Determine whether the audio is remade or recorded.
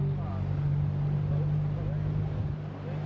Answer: recorded